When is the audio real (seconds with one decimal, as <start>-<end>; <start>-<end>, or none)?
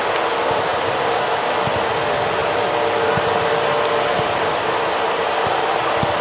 0.0-0.7; 1.4-6.2